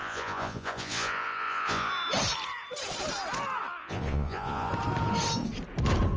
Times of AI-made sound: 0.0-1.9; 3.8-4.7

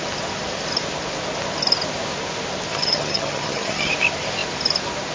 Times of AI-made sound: 2.7-3.9

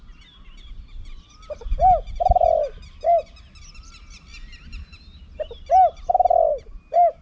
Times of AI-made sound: none

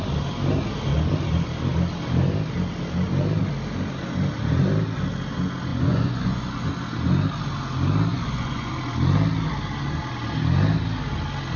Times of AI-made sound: 5.7-6.7; 8.1-8.7

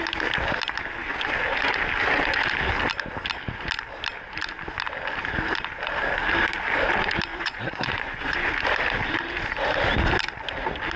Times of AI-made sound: 7.3-8.5

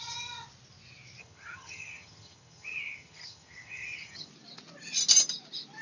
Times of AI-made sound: 1.2-4.3

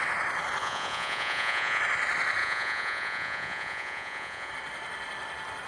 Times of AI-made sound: 0.6-1.8; 2.4-4.5

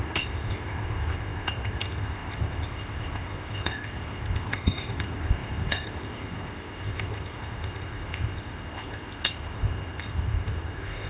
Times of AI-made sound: 0.0-11.1